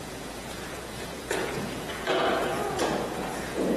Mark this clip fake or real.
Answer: fake